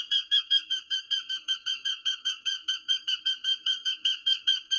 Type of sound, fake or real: fake